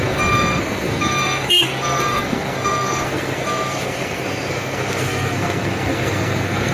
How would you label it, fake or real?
fake